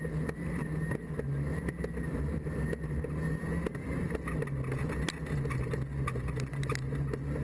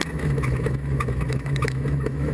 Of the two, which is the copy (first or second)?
second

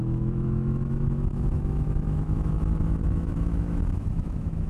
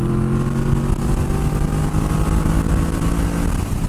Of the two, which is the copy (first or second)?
first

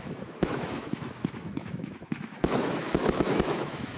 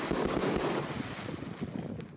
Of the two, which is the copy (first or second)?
first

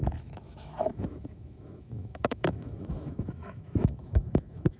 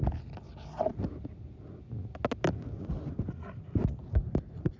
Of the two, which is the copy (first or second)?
first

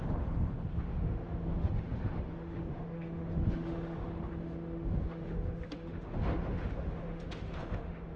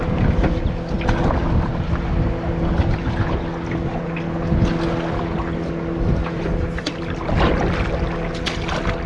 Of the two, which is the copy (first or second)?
first